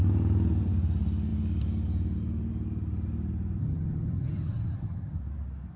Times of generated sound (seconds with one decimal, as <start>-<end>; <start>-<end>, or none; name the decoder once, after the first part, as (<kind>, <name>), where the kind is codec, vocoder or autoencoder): 3.6-5.2 (vocoder, HiFi-GAN)